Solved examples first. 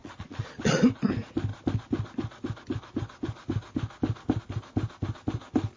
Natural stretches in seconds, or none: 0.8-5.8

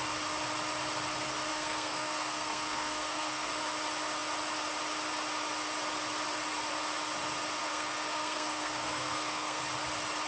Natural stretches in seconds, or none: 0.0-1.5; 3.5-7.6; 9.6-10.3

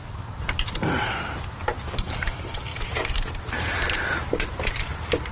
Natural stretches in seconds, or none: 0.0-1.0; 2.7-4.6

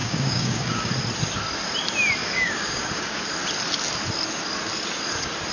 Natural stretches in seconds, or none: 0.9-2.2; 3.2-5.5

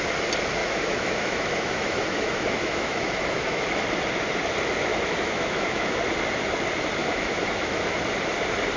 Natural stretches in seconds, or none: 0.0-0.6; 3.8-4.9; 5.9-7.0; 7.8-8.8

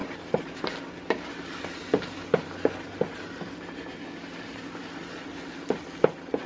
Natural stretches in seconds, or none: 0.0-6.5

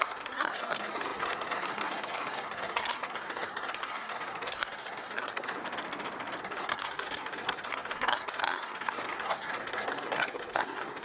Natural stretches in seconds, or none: 5.6-6.4

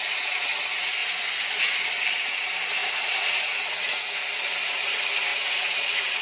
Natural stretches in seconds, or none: 0.0-2.8; 4.2-5.3